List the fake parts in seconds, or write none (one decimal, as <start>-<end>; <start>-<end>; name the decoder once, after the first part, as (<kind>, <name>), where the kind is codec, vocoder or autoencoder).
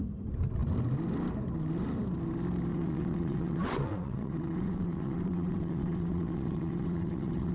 2.7-7.5 (vocoder, WaveNeXt)